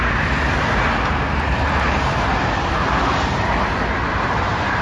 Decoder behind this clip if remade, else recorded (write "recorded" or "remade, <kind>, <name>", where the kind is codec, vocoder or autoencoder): recorded